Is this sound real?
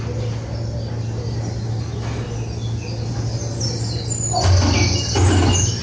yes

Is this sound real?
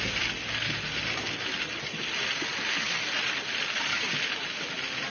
yes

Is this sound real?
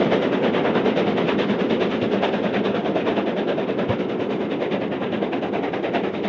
yes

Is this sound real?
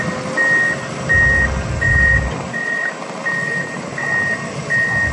yes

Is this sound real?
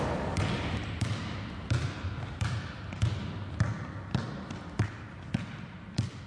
yes